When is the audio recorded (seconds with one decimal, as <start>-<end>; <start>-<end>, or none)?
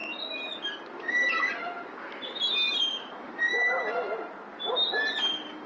3.4-5.7